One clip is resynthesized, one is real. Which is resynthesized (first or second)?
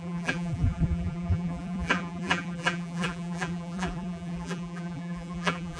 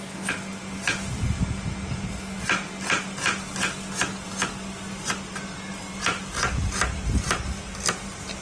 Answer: first